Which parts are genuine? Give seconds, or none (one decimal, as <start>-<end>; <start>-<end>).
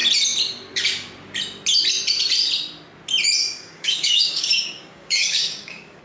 0.0-3.4